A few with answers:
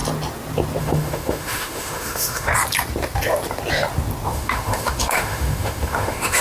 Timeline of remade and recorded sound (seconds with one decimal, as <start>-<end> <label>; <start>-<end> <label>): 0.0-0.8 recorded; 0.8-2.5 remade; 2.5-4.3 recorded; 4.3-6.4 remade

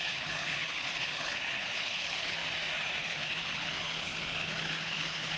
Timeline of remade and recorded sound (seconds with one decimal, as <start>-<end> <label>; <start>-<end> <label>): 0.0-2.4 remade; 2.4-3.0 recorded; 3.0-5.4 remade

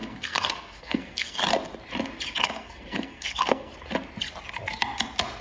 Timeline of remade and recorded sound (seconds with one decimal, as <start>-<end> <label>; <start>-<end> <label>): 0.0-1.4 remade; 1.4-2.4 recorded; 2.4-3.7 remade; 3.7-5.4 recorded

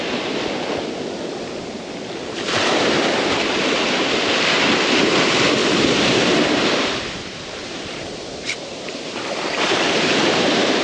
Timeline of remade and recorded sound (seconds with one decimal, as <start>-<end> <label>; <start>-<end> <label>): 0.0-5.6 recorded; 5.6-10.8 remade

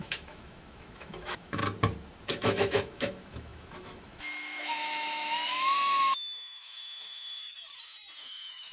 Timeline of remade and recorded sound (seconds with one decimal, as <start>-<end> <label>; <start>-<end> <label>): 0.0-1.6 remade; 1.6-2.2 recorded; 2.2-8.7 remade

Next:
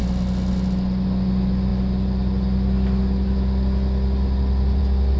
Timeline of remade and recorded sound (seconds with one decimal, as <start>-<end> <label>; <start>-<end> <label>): 0.0-5.2 recorded

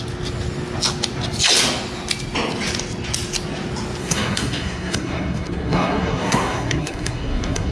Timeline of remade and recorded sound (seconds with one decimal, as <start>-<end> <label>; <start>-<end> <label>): 0.0-4.0 recorded; 4.0-7.7 remade